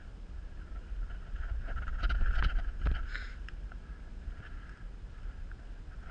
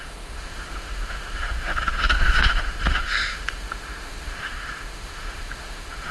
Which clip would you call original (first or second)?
first